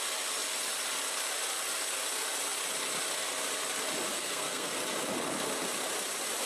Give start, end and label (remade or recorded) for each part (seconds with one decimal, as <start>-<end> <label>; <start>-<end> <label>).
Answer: 0.0-4.1 recorded; 4.1-4.8 remade; 4.8-6.5 recorded